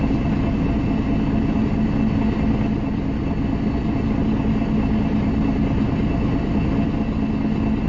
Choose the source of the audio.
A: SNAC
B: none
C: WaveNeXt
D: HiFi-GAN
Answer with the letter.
B